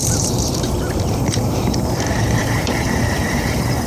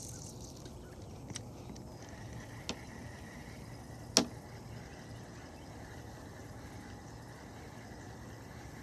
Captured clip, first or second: second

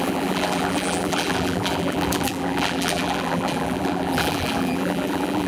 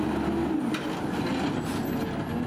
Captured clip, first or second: second